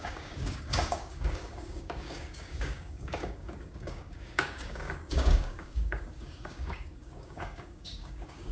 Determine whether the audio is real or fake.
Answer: fake